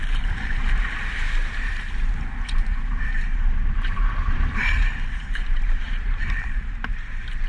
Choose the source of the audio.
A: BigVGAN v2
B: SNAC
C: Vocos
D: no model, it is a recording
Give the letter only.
A